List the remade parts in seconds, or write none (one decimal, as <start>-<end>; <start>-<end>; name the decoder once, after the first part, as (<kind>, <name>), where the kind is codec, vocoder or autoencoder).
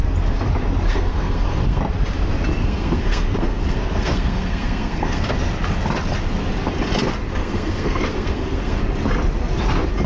0.9-1.8 (codec, SNAC); 2.6-5.2; 7.4-8.8